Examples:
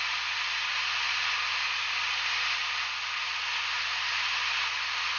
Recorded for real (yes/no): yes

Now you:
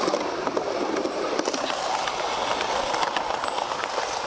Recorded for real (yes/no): yes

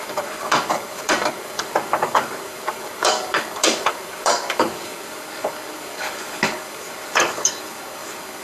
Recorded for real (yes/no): no